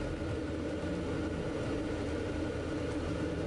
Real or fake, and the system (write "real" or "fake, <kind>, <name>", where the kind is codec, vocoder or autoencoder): real